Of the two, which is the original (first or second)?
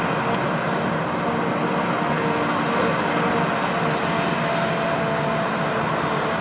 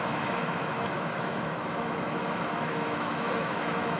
first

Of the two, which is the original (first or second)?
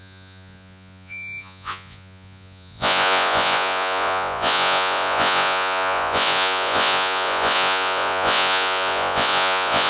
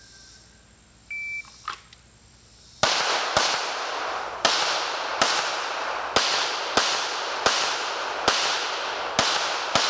second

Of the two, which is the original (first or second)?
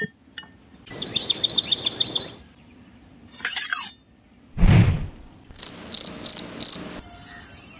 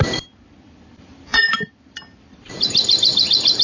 first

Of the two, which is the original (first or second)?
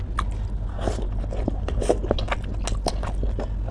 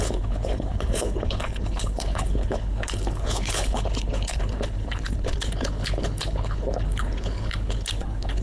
first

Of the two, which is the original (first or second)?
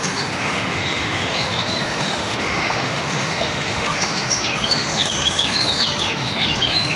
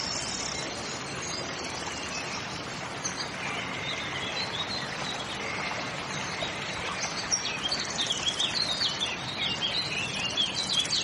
second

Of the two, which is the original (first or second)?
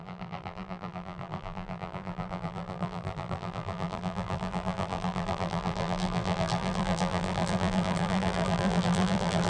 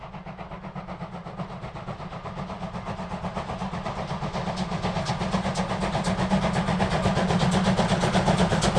second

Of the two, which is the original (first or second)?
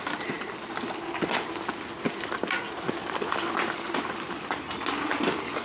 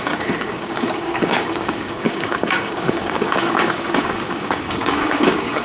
first